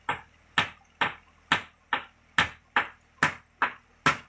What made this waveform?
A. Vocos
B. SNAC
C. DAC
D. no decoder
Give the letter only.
D